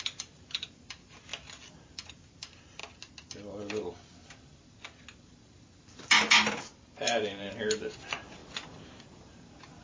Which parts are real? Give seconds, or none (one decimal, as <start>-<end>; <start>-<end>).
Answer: 1.3-2.1; 2.8-6.5